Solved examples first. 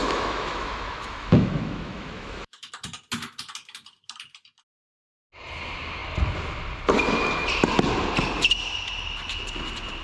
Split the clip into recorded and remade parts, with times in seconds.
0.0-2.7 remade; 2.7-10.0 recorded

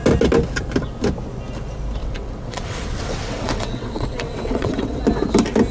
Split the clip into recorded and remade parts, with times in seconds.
0.0-2.0 recorded; 2.0-5.0 remade; 5.0-5.7 recorded

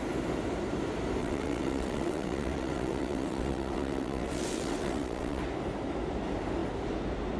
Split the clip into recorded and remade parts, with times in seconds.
0.0-1.2 recorded; 1.2-5.4 remade; 5.4-7.4 recorded